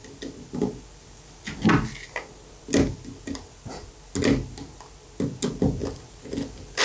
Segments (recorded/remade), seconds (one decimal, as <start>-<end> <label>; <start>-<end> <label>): 0.0-6.8 recorded